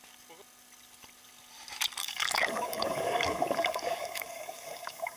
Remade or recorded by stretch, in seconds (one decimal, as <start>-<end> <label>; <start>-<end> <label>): 0.0-2.0 recorded; 2.0-5.2 remade